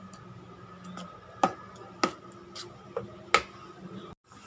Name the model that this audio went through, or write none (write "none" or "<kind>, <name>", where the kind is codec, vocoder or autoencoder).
none